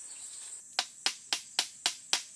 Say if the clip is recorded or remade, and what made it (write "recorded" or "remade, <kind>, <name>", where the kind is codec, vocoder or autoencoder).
recorded